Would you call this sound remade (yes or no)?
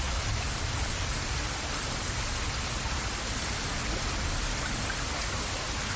no